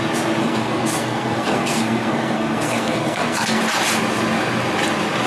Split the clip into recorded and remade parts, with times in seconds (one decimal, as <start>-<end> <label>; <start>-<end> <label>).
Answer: 0.0-0.4 recorded; 0.4-3.6 remade; 3.6-5.3 recorded